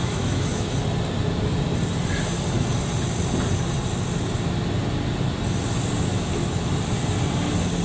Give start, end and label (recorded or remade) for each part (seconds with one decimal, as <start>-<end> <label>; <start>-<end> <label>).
0.0-0.7 remade; 0.7-6.1 recorded; 6.1-6.7 remade; 6.7-7.8 recorded